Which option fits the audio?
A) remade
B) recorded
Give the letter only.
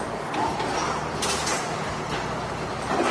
B